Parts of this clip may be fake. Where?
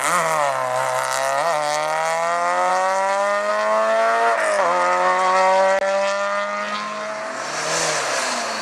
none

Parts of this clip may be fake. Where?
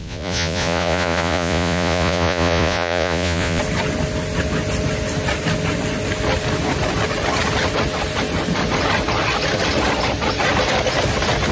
0.0-3.6 (vocoder, Vocos)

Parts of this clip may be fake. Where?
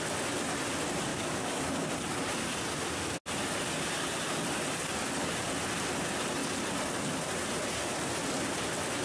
1.1-1.9 (codec, DAC)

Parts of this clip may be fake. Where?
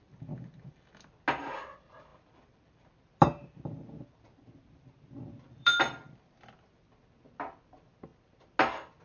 2.1-6.2 (vocoder, BigVGAN v2)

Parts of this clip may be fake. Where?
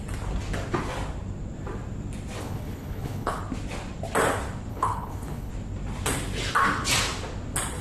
2.4-3.4 (codec, HILCodec); 4.7-5.5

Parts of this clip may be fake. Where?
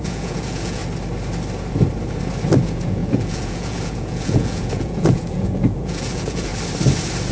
0.0-0.8 (vocoder, Vocos); 2.6-6.5